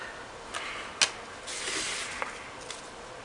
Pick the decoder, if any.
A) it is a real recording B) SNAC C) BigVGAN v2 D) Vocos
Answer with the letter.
A